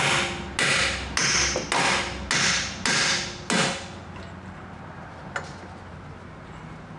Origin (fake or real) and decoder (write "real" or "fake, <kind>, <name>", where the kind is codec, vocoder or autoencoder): real